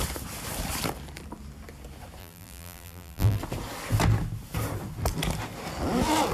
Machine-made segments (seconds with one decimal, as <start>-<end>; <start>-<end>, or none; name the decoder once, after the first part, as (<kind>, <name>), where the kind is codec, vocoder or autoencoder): 2.2-3.4 (vocoder, BigVGAN v2)